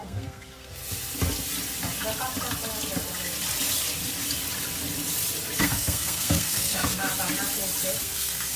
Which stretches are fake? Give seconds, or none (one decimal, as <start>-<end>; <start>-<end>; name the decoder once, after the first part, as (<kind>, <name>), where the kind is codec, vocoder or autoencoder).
0.0-0.8 (codec, SNAC); 5.6-7.1; 8.0-8.6